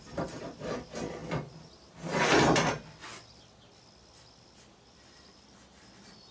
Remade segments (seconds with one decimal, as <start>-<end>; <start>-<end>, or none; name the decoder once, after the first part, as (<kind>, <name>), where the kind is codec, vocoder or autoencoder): 0.0-1.2 (vocoder, BigVGAN v2); 5.0-6.3